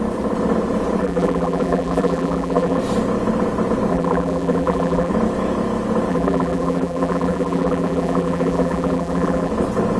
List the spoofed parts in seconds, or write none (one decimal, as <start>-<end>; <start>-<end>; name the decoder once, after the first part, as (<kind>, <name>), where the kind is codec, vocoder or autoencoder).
1.0-2.8 (vocoder, BigVGAN v2); 3.9-5.1; 6.1-9.5

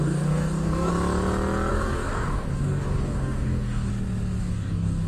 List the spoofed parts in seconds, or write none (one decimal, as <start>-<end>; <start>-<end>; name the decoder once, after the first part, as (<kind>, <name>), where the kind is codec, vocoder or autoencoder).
0.0-0.9 (codec, DAC); 1.7-3.9; 4.4-5.1

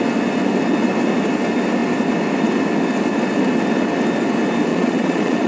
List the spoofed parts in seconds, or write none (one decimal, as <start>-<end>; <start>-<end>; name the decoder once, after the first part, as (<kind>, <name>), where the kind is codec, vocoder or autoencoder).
4.7-5.5 (vocoder, Vocos)

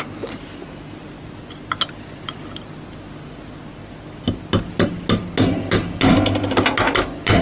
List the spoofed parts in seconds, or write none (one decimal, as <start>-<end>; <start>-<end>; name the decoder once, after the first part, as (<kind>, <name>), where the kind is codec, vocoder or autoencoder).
none

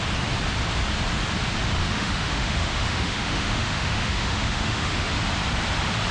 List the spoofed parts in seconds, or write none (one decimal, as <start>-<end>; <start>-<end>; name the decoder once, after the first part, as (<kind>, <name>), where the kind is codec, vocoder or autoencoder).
1.8-5.1 (autoencoder, DAC-VAE)

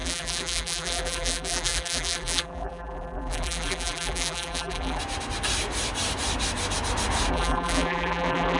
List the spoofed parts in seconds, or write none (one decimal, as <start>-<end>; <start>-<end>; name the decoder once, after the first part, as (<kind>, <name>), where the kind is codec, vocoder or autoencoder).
0.0-5.0 (vocoder, BigVGAN v2); 7.3-8.6